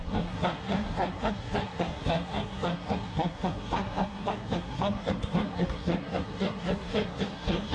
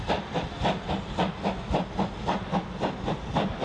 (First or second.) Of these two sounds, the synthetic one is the first